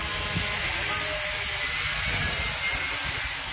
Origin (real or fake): real